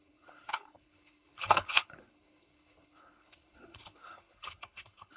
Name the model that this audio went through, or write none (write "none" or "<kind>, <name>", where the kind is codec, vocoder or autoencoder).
codec, HILCodec